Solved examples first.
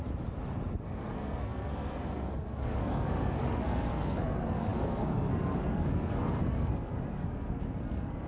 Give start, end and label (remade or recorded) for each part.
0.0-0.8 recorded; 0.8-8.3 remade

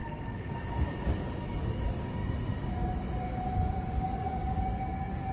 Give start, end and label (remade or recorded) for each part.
0.0-2.2 remade; 2.2-4.0 recorded; 4.0-5.3 remade

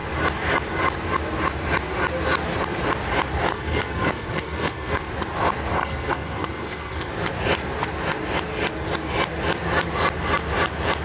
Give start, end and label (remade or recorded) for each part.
0.0-3.5 recorded; 3.5-5.1 remade; 5.1-5.8 recorded; 5.8-7.1 remade; 7.1-11.0 recorded

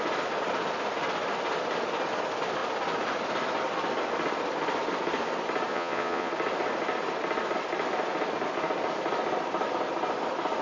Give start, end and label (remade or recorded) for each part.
0.0-5.7 recorded; 5.7-6.3 remade; 6.3-10.6 recorded

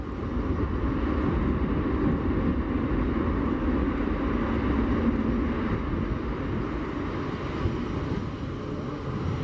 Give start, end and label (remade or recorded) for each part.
0.0-9.4 recorded

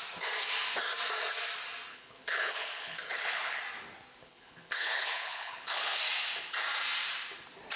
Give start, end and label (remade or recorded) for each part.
0.0-1.9 recorded; 1.9-3.6 remade; 3.6-4.2 recorded; 4.2-6.0 remade; 6.0-7.8 recorded